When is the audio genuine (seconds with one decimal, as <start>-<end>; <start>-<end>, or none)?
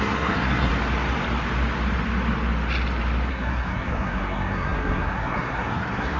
0.7-3.3